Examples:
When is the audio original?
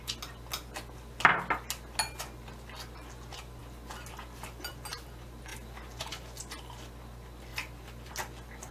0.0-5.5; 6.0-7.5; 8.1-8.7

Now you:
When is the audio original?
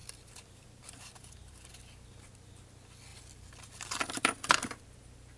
1.7-3.1; 4.8-5.4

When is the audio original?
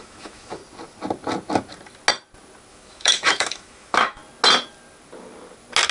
0.6-2.7; 4.2-5.9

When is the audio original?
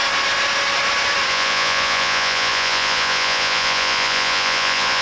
0.0-1.3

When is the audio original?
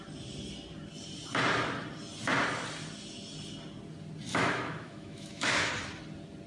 0.0-4.3; 5.7-6.5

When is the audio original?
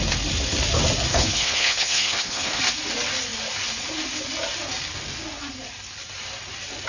0.0-1.1; 2.6-6.9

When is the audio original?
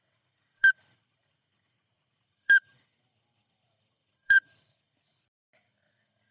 none